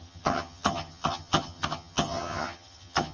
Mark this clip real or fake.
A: fake